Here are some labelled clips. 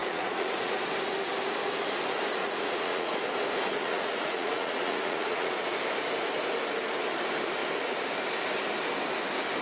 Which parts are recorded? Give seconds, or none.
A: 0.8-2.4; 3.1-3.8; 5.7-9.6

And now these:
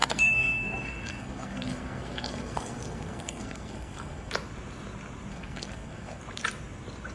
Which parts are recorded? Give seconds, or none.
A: 4.3-5.3; 6.2-7.1

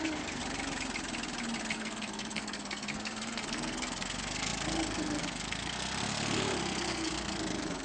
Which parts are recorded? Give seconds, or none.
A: 0.4-1.7

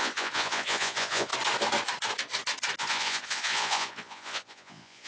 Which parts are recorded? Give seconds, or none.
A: 1.3-2.8

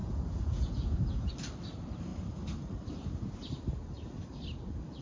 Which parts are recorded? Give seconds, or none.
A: 1.3-5.0

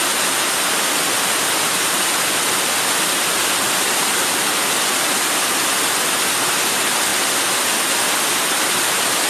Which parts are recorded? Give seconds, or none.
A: 0.0-9.3

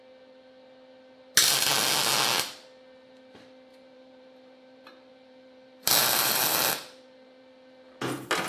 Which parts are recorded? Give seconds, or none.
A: 0.0-3.7; 7.4-8.5